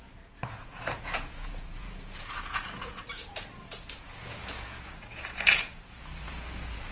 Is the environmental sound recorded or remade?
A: remade